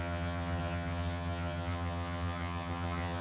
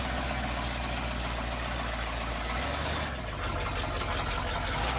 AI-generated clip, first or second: first